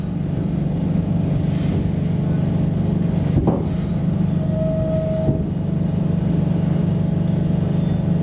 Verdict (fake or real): real